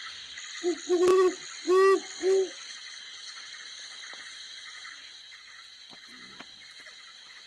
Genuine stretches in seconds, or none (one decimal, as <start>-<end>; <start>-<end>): 0.0-7.5

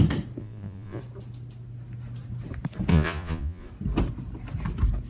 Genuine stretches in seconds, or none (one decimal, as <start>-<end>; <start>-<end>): 0.0-0.4; 1.0-2.9; 3.7-5.1

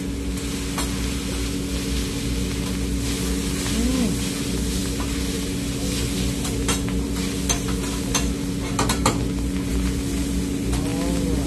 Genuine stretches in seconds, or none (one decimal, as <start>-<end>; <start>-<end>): 0.0-11.5

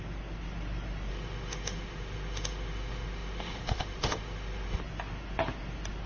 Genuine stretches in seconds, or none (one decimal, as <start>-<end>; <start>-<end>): 0.0-1.1; 4.8-6.1